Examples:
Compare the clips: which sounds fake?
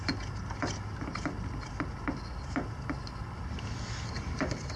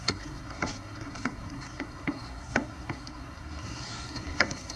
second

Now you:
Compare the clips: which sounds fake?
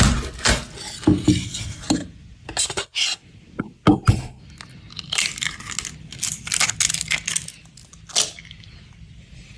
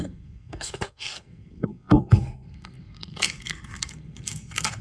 second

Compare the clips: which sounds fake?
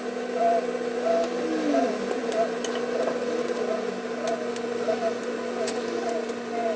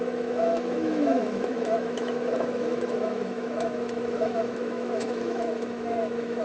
second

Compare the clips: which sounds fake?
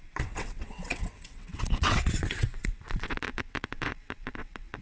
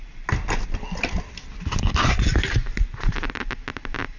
first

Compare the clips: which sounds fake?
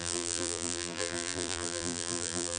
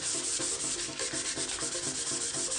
first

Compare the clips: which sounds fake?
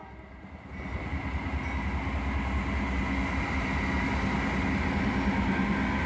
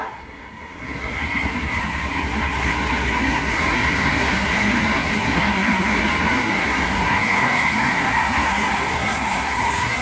second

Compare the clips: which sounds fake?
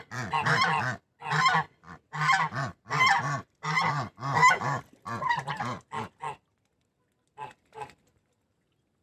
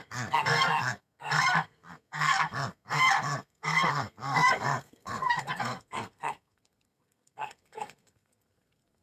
second